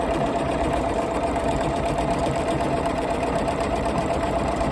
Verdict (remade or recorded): remade